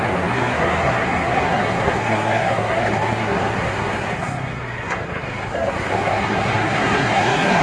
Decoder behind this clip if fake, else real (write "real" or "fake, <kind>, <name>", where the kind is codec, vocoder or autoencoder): fake, codec, SNAC